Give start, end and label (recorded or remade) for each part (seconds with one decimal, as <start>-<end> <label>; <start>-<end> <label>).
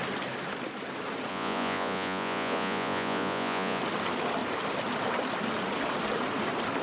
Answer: 0.0-1.3 recorded; 1.3-3.8 remade; 3.8-6.8 recorded